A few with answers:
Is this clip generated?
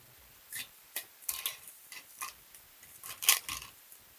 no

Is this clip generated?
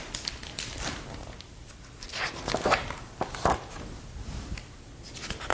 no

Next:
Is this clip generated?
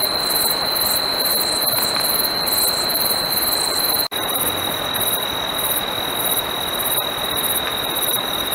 no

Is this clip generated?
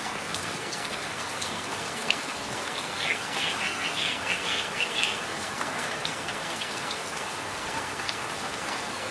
yes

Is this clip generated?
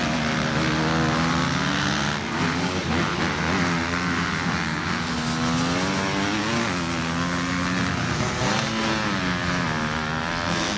no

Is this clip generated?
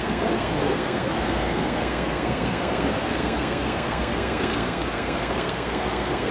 yes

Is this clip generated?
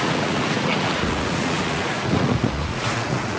yes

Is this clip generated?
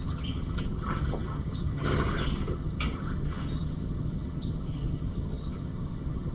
yes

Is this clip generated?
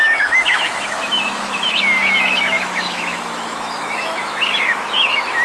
yes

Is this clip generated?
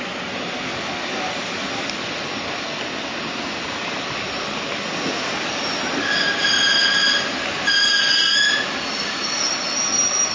no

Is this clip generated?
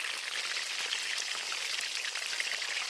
no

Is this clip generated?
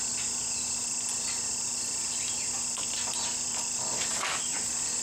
no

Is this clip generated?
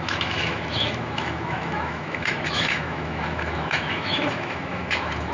yes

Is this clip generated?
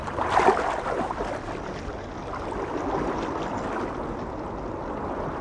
no